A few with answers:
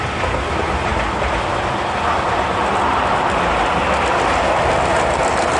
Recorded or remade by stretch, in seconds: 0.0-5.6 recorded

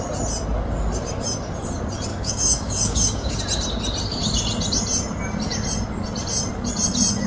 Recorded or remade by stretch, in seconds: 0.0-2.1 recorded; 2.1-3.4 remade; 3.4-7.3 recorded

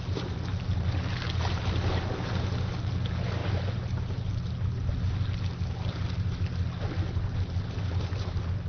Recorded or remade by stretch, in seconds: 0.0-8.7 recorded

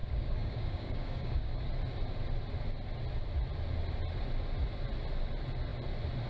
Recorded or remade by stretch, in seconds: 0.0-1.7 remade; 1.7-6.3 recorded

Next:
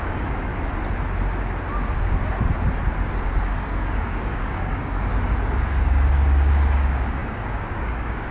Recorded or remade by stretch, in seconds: 0.0-0.5 remade; 0.5-3.3 recorded; 3.3-5.1 remade; 5.1-5.6 recorded; 5.6-8.3 remade